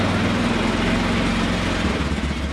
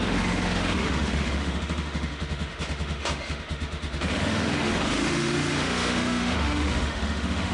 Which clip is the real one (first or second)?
first